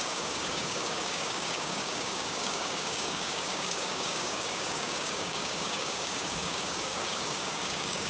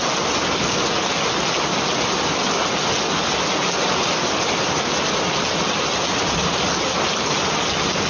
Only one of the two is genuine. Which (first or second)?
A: second